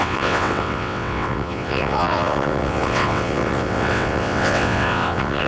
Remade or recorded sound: remade